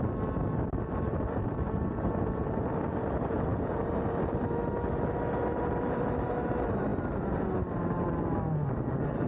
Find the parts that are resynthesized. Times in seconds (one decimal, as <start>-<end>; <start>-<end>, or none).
none